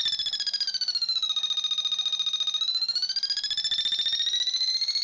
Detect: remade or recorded recorded